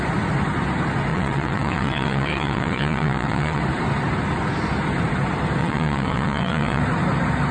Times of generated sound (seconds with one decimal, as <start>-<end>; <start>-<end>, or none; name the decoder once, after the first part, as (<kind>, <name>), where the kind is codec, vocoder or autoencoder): 1.1-3.6 (vocoder, WaveNeXt); 5.6-6.8